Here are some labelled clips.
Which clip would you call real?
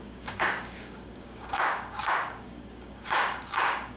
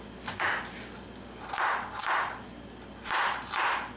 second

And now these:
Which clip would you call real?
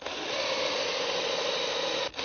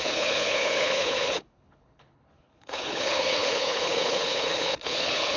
first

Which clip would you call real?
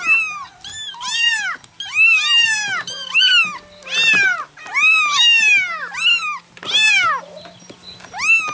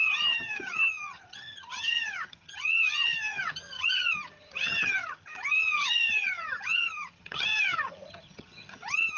first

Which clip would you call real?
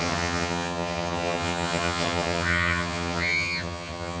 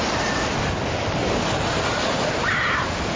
second